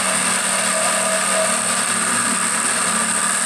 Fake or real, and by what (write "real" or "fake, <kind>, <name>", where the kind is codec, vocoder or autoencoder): real